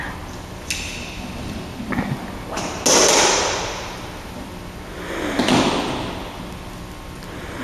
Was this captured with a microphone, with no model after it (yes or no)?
yes